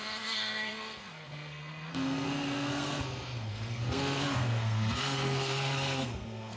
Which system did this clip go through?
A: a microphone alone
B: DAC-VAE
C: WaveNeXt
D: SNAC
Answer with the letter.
D